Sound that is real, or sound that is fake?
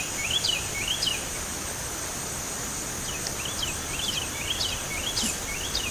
real